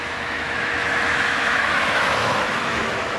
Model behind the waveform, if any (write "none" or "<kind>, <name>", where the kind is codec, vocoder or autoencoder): autoencoder, DAC-VAE